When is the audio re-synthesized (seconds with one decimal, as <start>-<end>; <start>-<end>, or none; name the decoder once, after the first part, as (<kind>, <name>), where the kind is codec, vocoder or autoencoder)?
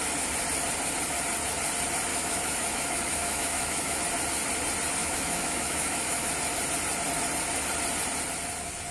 2.1-4.0 (autoencoder, DAC-VAE); 5.0-6.3